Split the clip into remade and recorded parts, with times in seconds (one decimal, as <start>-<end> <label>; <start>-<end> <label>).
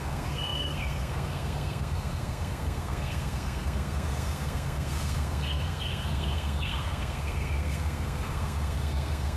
0.0-9.4 remade